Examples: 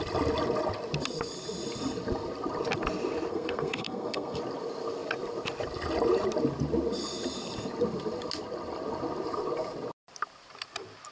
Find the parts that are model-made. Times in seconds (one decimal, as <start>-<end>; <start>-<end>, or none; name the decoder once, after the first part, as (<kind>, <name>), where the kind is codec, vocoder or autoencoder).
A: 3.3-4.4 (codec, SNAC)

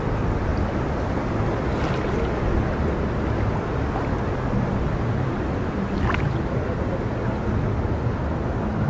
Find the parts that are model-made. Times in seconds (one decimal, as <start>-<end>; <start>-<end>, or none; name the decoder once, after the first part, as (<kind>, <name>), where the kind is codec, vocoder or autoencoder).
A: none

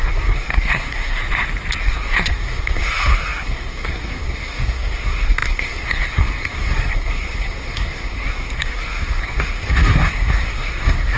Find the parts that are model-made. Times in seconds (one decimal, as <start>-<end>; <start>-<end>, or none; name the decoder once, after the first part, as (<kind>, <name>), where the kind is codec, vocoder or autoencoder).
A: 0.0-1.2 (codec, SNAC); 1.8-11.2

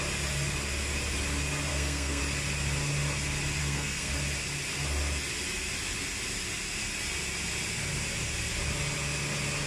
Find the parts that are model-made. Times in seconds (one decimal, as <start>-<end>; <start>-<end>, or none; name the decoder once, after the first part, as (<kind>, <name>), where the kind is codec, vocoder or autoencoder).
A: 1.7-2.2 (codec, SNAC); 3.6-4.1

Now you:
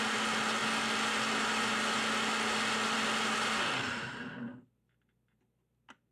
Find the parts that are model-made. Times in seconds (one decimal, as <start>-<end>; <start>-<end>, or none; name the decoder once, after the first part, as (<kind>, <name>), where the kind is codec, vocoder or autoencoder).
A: none

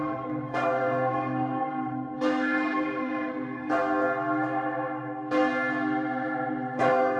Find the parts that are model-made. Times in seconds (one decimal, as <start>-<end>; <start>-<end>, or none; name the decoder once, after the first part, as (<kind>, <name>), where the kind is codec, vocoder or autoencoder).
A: 0.0-3.7 (codec, SNAC); 6.8-7.2

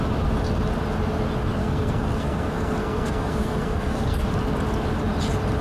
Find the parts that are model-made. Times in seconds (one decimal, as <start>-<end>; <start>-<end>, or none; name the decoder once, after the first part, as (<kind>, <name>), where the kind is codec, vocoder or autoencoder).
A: 1.6-4.3 (codec, SNAC)

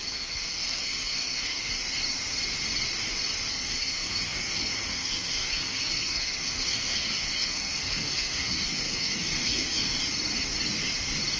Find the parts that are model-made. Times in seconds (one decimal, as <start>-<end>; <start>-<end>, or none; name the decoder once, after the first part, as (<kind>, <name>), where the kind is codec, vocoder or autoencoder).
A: 0.0-1.8 (codec, SNAC); 3.5-10.0